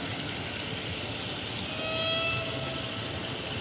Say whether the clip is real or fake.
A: real